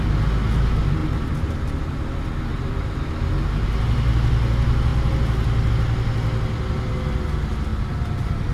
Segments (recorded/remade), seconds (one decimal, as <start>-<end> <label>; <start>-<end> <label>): 0.0-1.0 recorded; 1.0-1.7 remade; 1.7-2.5 recorded; 2.5-3.0 remade; 3.0-7.7 recorded; 7.7-8.5 remade

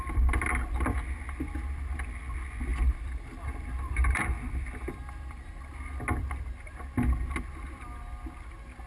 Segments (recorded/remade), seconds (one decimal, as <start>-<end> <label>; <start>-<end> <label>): 0.0-2.7 recorded; 2.7-6.0 remade; 6.0-8.9 recorded

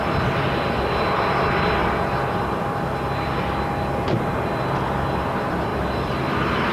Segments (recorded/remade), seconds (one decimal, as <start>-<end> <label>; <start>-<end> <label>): 0.0-5.7 recorded; 5.7-6.7 remade